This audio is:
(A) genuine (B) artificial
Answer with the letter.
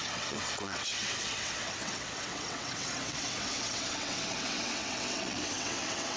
B